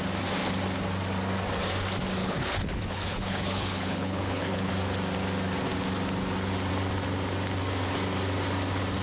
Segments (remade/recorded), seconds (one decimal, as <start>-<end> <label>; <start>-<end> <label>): 0.0-2.2 recorded; 2.2-4.7 remade; 4.7-9.0 recorded